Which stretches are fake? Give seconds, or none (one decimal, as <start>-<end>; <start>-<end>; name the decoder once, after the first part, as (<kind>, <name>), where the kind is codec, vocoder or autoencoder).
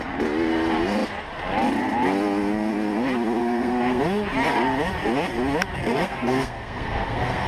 3.4-4.0 (codec, SNAC); 5.8-7.5